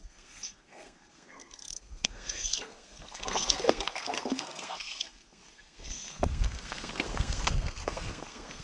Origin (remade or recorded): remade